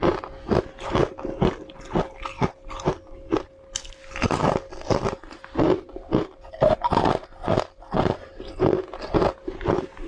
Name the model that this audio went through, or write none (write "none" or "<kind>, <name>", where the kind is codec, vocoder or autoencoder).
none